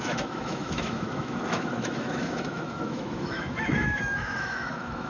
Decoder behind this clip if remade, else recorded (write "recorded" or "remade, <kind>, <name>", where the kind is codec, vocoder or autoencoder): remade, autoencoder, DAC-VAE